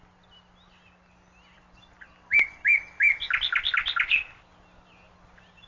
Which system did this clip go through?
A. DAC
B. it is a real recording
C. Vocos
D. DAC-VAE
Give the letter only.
B